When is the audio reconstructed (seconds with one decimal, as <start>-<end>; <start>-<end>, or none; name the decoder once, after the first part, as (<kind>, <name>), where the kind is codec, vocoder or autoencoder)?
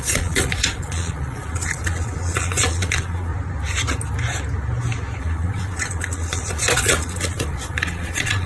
0.0-3.3 (vocoder, Vocos); 5.2-8.5